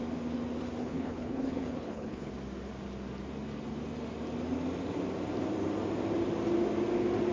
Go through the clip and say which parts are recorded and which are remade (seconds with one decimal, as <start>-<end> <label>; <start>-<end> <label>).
0.0-0.8 recorded; 0.8-2.3 remade; 2.3-7.3 recorded